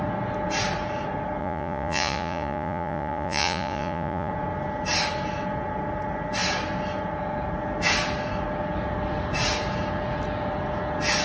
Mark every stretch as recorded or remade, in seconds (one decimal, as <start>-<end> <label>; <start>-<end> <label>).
0.0-1.4 recorded; 1.4-4.3 remade; 4.3-11.2 recorded